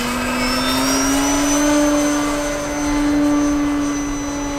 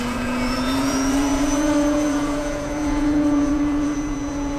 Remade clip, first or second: second